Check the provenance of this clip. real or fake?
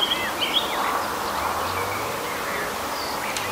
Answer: real